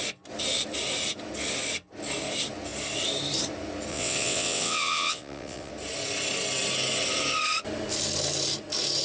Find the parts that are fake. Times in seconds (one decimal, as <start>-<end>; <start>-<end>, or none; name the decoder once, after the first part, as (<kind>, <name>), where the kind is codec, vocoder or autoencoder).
3.9-5.7 (vocoder, WaveNeXt)